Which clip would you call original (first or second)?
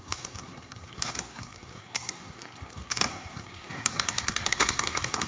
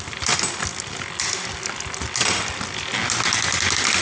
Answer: second